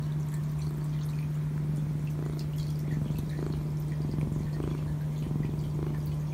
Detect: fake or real real